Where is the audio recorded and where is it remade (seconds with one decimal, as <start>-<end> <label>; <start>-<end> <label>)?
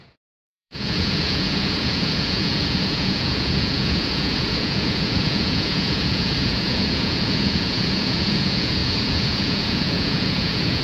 0.0-10.8 remade